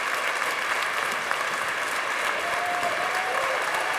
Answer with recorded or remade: recorded